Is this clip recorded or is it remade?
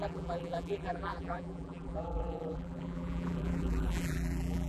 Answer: remade